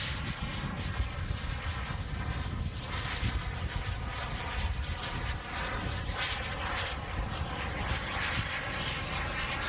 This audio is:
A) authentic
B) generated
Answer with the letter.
A